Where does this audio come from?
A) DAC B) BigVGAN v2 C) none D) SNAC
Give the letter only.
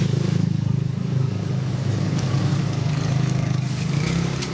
A